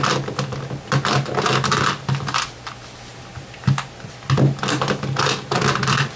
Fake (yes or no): no